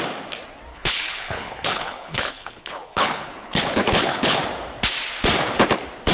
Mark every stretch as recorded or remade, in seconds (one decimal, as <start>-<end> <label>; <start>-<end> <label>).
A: 0.0-0.7 recorded; 0.7-4.4 remade; 4.4-6.1 recorded